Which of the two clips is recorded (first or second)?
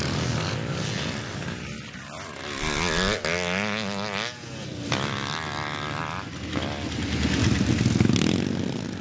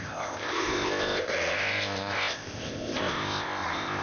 first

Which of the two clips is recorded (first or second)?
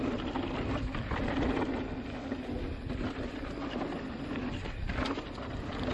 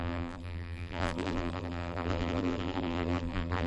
first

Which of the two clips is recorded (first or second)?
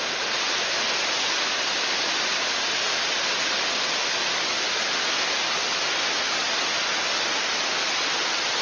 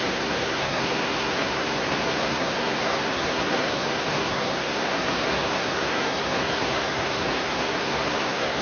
first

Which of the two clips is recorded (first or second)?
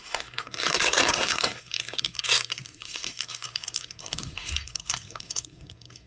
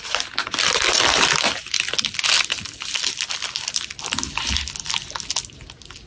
second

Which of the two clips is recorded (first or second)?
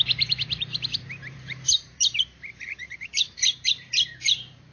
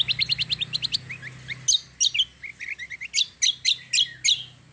second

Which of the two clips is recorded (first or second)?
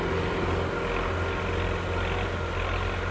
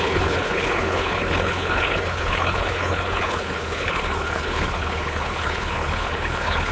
first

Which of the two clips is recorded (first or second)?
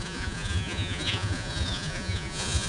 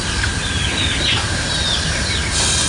second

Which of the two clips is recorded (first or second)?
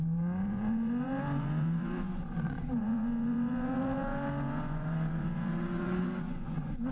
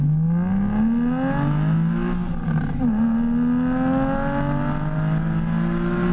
second